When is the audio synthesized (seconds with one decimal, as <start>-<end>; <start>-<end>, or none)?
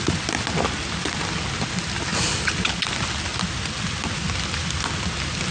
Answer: none